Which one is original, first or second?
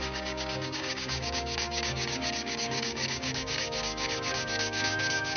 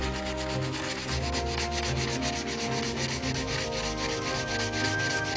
second